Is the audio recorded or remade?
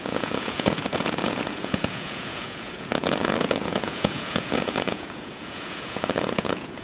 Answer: remade